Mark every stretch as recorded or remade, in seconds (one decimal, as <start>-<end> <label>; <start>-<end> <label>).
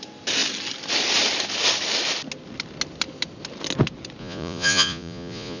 0.0-4.2 recorded; 4.2-5.6 remade